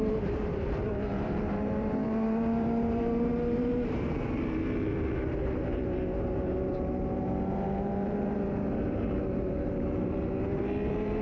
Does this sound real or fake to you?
fake